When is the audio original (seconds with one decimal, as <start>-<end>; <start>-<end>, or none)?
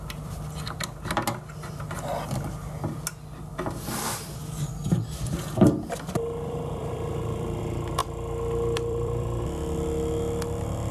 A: 0.0-4.4; 7.6-8.0; 9.4-10.9